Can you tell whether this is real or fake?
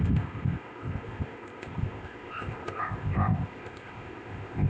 fake